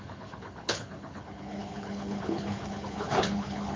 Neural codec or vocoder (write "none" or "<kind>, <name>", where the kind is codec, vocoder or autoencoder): codec, HILCodec